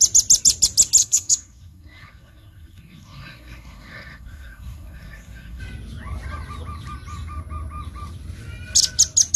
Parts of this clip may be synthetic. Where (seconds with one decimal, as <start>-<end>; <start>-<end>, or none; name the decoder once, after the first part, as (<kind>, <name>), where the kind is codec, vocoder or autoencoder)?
1.0-5.6 (codec, SNAC)